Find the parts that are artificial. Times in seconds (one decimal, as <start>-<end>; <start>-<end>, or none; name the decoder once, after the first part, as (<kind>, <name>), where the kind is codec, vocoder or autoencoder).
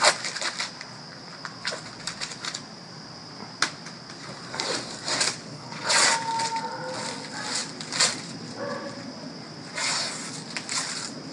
5.4-5.9 (codec, HILCodec)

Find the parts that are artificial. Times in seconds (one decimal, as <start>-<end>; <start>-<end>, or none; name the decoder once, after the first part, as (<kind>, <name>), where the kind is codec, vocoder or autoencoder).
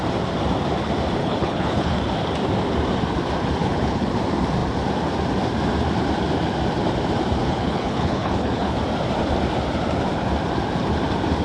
1.2-2.0 (codec, HILCodec); 3.6-4.1; 7.4-8.8